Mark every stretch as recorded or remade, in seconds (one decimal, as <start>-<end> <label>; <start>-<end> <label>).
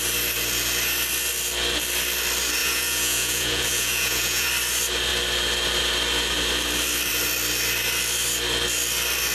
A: 0.0-2.6 recorded; 2.6-4.5 remade; 4.5-9.3 recorded